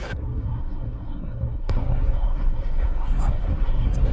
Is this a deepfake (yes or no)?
yes